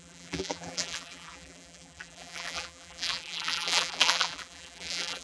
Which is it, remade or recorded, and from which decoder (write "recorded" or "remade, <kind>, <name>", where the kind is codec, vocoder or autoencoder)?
remade, vocoder, BigVGAN v2